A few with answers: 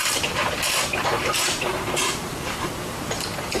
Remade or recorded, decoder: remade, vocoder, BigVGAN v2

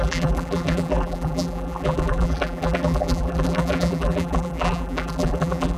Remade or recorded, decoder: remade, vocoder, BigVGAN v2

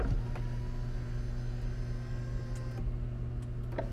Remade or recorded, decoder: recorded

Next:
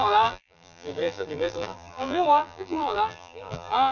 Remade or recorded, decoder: remade, vocoder, BigVGAN v2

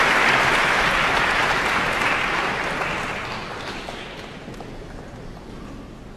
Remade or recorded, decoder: recorded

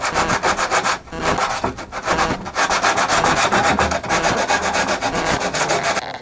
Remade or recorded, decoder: recorded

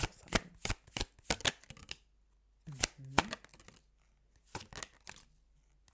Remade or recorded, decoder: recorded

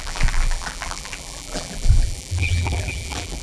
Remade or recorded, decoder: remade, vocoder, BigVGAN v2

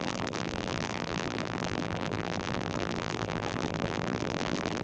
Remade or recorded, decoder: remade, vocoder, BigVGAN v2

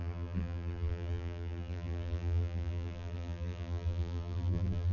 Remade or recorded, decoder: remade, vocoder, BigVGAN v2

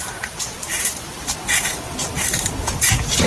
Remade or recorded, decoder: remade, vocoder, BigVGAN v2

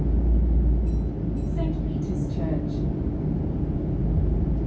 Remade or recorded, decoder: recorded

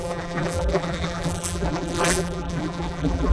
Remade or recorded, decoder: remade, vocoder, BigVGAN v2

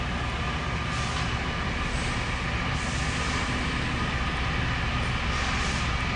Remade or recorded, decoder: recorded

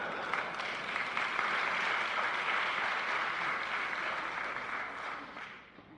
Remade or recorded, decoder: recorded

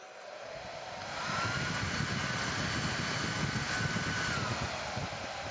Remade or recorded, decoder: recorded